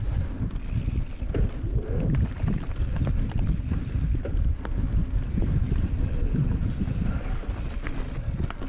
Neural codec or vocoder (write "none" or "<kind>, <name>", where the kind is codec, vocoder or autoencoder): none